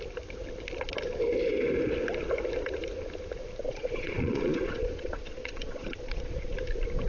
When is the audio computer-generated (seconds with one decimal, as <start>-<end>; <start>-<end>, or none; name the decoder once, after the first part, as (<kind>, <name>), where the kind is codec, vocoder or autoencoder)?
3.6-6.5 (vocoder, Vocos)